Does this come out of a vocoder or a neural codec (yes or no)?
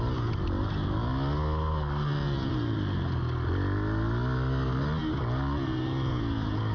no